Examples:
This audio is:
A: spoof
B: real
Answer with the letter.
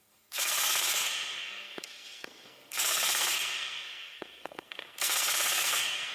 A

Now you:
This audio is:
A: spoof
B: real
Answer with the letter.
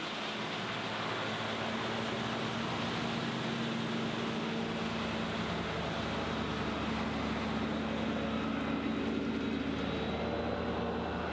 B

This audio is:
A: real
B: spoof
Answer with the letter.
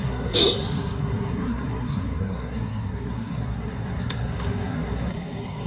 B